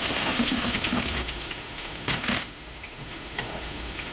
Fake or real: fake